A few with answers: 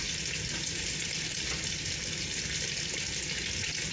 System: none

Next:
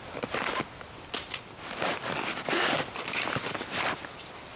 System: none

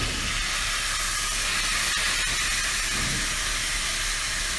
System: none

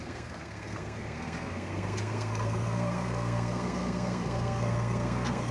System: codec, SNAC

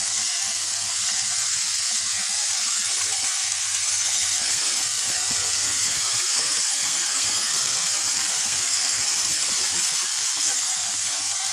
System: codec, SNAC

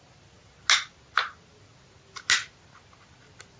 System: none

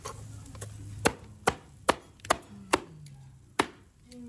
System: none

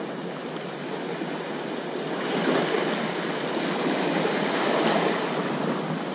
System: none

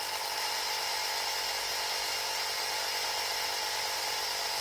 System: none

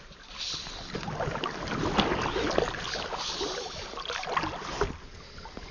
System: none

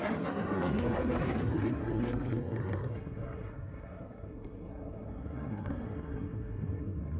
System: codec, SNAC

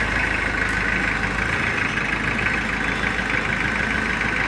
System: none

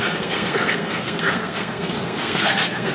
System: codec, SNAC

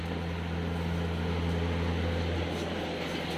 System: none